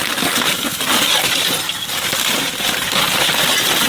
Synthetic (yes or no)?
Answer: no